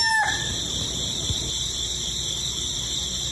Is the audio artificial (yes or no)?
yes